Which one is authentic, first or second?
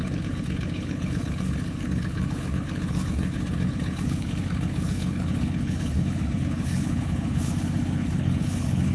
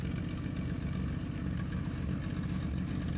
second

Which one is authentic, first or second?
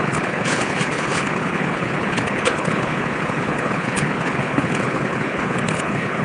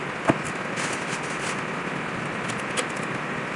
second